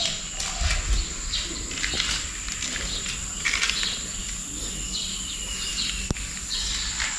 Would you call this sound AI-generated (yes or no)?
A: no